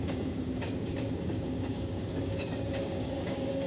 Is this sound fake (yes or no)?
yes